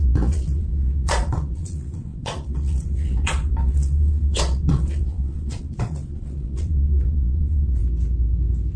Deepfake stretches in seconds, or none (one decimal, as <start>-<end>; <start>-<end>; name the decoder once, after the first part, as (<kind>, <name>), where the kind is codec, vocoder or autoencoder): 0.0-7.8 (vocoder, Vocos)